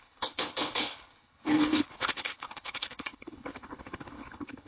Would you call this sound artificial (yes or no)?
yes